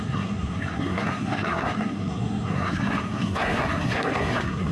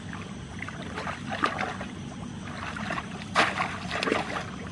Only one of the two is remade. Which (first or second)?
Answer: first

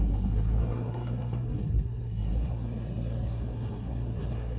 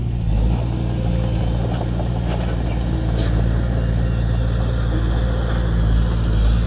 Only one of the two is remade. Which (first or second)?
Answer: first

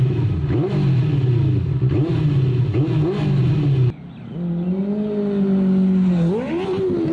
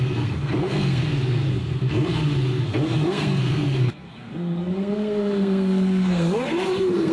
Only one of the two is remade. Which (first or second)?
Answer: second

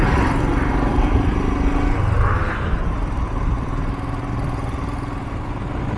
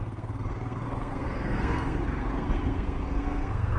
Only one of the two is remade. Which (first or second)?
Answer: second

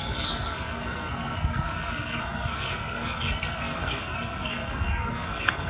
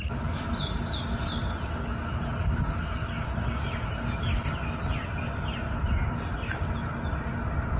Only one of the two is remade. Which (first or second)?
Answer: first